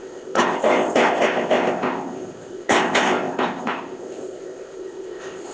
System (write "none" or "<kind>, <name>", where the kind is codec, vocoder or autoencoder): codec, ZipCodec